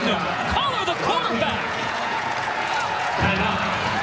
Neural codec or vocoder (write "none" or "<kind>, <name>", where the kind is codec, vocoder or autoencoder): vocoder, Vocos